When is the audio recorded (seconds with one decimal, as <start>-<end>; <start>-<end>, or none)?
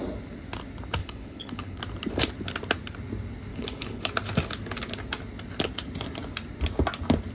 0.0-1.0; 1.8-3.5; 4.1-7.3